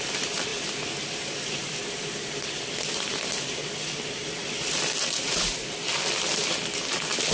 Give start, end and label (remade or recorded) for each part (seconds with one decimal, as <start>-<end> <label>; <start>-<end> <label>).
0.0-7.3 recorded